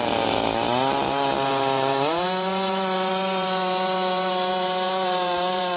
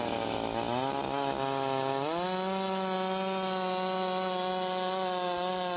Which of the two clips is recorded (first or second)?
second